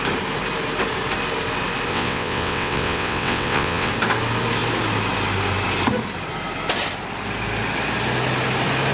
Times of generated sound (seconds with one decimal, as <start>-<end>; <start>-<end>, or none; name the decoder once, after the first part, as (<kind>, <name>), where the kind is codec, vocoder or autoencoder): 1.9-3.9 (vocoder, WaveNeXt)